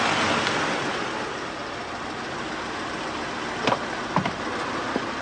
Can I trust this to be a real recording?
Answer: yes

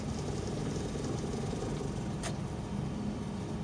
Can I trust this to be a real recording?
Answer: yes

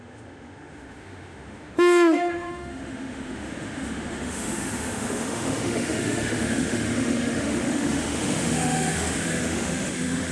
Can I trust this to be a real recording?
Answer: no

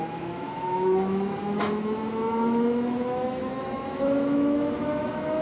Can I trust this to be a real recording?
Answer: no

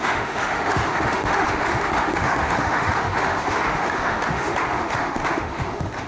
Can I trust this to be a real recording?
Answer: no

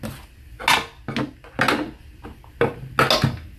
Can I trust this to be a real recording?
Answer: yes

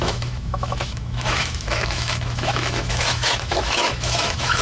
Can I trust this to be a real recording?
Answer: no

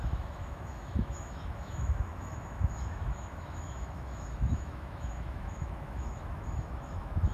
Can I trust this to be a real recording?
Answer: no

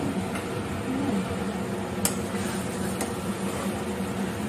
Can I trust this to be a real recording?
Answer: yes